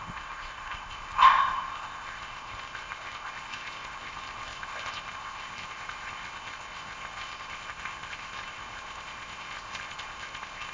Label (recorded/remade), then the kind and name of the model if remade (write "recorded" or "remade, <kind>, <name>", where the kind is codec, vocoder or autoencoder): remade, codec, ZipCodec